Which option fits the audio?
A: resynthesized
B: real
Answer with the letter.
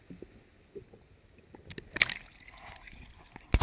B